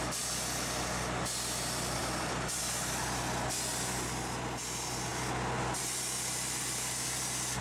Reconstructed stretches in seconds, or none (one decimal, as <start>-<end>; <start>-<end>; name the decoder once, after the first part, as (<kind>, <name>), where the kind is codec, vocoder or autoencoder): 2.0-2.6 (vocoder, BigVGAN v2)